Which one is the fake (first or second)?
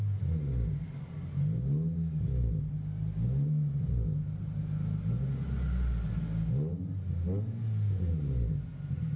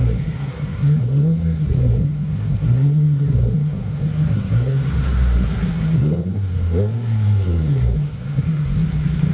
second